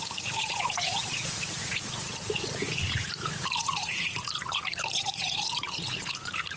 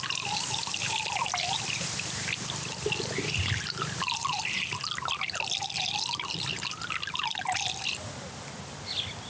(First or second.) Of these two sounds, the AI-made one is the first